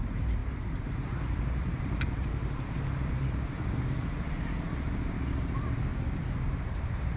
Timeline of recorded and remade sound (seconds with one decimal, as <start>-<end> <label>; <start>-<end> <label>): 0.0-0.4 recorded; 0.4-4.4 remade; 4.4-5.9 recorded; 5.9-7.2 remade